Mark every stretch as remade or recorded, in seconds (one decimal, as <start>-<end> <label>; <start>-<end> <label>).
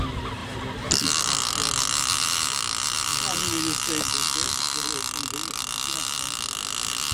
0.0-7.1 recorded